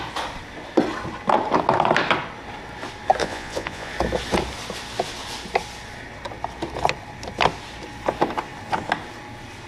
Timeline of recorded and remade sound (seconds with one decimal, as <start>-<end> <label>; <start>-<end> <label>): 0.0-3.2 recorded; 3.2-3.9 remade; 3.9-9.7 recorded